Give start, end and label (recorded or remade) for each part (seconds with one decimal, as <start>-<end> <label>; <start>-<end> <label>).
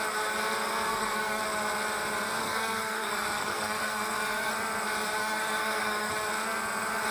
0.0-0.9 recorded; 0.9-1.4 remade; 1.4-2.4 recorded; 2.4-4.5 remade; 4.5-5.2 recorded; 5.2-6.1 remade; 6.1-7.1 recorded